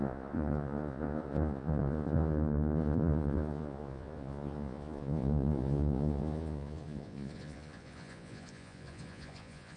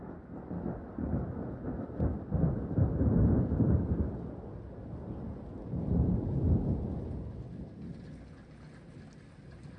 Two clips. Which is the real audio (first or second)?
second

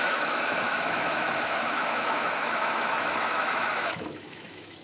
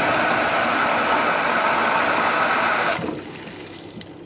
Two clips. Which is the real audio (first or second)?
second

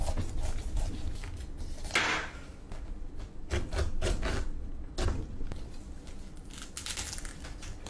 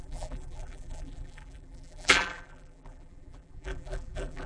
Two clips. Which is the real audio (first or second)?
first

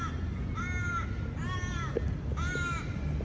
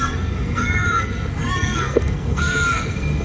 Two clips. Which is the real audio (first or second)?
first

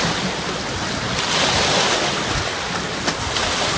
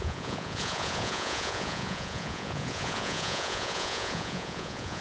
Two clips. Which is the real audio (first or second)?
first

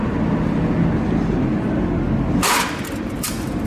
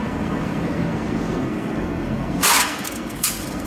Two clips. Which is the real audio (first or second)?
first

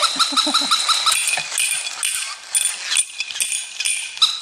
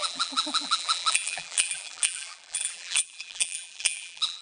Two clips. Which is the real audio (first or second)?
first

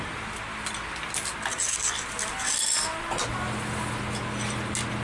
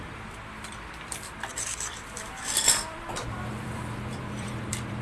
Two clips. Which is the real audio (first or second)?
first